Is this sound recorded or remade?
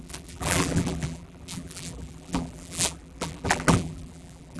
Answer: remade